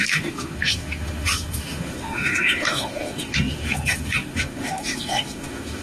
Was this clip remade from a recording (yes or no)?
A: yes